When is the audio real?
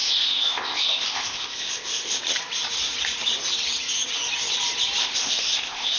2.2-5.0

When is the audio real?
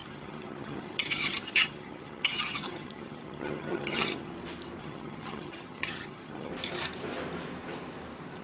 4.3-4.8; 6.5-8.4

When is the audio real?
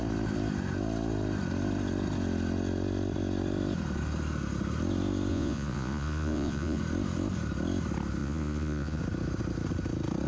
0.0-5.3; 6.8-8.2; 9.0-10.3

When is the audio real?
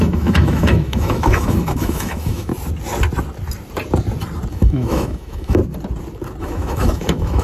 2.5-4.5; 5.6-6.4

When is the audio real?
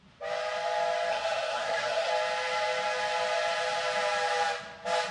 0.0-1.1; 2.1-5.1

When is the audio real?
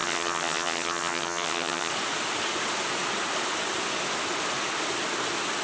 1.9-5.6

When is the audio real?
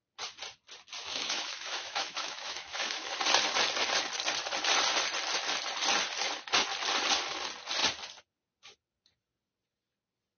0.0-1.0; 3.1-10.4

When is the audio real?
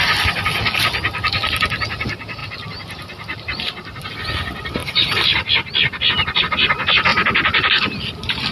0.0-2.4; 4.1-8.5